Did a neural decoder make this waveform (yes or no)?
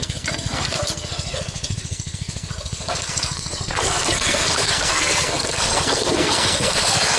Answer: yes